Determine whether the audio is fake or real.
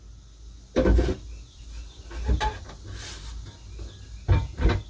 real